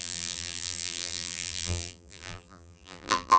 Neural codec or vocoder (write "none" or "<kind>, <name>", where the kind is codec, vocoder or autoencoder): vocoder, BigVGAN v2